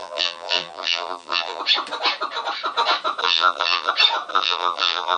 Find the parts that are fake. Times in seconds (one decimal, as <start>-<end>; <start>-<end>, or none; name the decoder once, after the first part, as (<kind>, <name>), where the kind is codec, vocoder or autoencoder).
0.0-1.6 (vocoder, BigVGAN v2); 3.2-3.9; 4.3-5.2